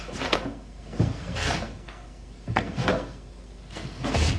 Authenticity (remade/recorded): remade